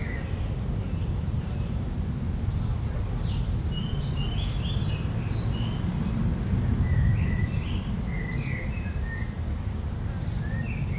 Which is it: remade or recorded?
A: recorded